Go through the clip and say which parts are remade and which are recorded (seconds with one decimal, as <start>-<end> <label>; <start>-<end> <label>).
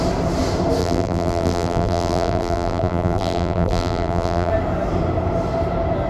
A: 0.0-0.8 recorded; 0.8-4.5 remade; 4.5-6.1 recorded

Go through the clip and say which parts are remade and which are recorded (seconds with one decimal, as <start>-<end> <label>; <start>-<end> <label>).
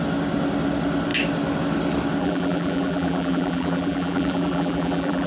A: 0.0-2.2 recorded; 2.2-5.3 remade